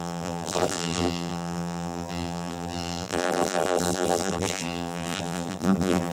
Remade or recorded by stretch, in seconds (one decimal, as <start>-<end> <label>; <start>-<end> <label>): 0.0-6.1 remade